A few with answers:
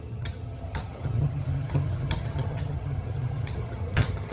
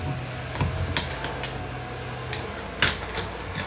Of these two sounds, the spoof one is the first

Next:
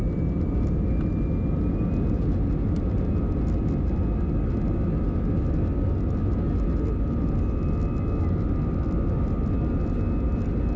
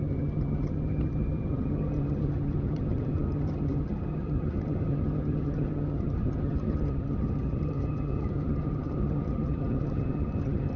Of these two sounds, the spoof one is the second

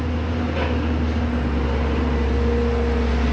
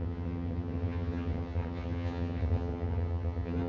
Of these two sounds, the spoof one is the second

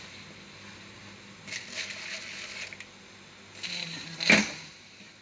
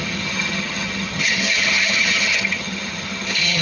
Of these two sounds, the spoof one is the second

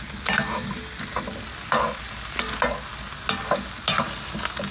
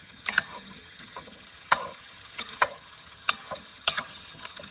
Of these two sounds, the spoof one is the second